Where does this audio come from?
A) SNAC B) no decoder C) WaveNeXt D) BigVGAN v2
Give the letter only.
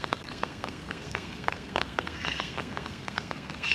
A